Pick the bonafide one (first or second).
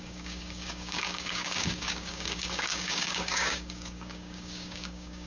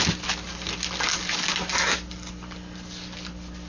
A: second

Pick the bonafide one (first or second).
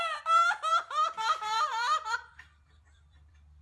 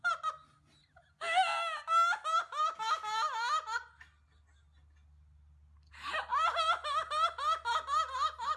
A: second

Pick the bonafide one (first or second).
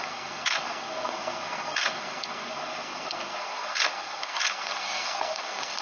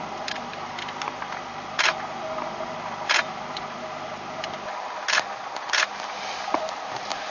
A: second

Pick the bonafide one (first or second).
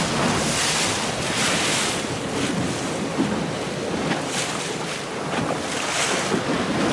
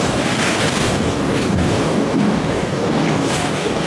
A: first